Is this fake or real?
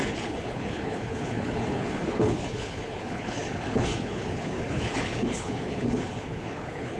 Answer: fake